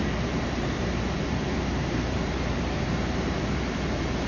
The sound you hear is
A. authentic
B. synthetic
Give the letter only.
B